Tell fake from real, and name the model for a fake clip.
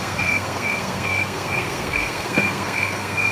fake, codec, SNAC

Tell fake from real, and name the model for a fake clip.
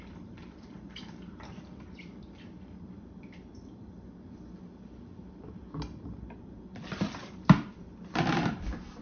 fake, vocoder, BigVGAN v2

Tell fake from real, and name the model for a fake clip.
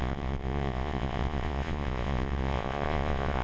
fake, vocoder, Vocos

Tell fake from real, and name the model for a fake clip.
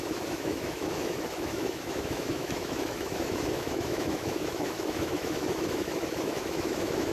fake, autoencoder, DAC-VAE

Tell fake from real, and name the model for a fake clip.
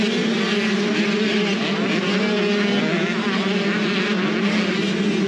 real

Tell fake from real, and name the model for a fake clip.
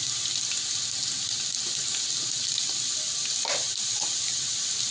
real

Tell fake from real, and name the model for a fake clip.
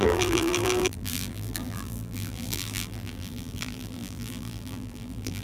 fake, vocoder, BigVGAN v2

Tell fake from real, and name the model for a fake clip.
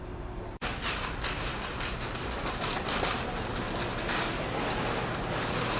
real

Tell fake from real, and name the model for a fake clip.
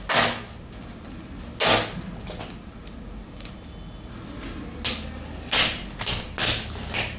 real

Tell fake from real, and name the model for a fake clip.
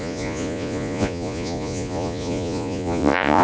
fake, vocoder, Vocos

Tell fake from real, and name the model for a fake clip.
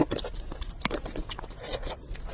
real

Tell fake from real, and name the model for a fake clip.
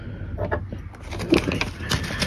real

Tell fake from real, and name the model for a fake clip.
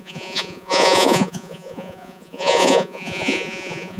fake, vocoder, Vocos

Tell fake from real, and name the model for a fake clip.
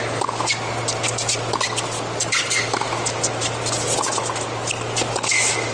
real